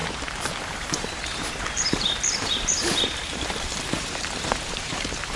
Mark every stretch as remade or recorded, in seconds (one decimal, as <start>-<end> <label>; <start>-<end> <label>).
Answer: 0.0-0.6 recorded; 0.6-5.4 remade